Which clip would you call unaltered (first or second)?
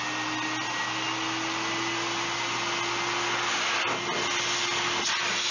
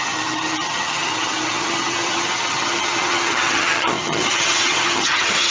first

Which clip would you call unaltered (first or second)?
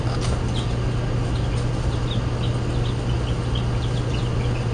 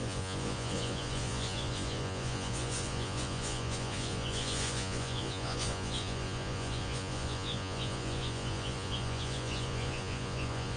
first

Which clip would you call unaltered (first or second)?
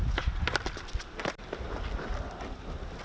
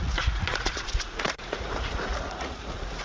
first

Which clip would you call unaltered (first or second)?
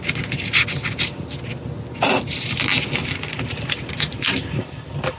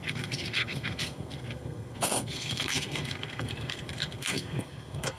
first